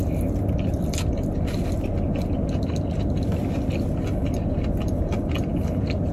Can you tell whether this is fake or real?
real